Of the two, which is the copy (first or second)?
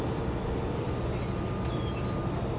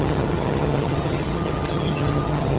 second